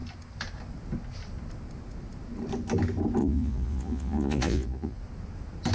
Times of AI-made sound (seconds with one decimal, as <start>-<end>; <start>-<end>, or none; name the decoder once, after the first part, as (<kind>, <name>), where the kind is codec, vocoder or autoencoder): 3.2-5.0 (vocoder, Vocos)